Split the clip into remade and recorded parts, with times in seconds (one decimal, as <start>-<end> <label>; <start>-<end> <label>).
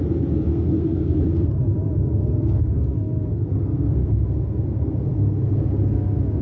0.0-0.5 recorded; 0.5-1.6 remade; 1.6-2.0 recorded; 2.0-2.6 remade; 2.6-3.3 recorded; 3.3-5.7 remade; 5.7-6.4 recorded